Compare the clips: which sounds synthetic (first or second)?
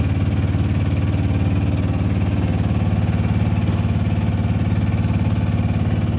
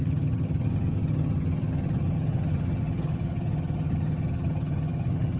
second